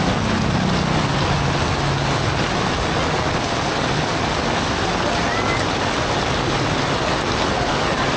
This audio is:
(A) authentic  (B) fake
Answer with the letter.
A